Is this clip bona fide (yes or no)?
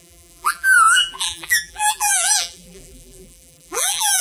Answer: no